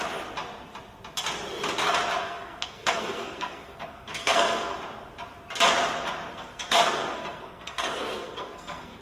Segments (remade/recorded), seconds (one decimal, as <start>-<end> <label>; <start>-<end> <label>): 0.0-2.2 recorded; 2.2-4.8 remade; 4.8-6.3 recorded; 6.3-9.0 remade